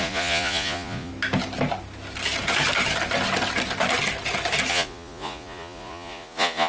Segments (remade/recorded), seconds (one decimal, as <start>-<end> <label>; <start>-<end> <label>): 0.0-1.1 remade; 1.1-4.7 recorded; 4.7-6.7 remade